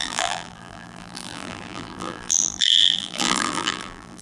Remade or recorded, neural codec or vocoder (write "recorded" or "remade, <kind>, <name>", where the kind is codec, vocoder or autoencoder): remade, vocoder, BigVGAN v2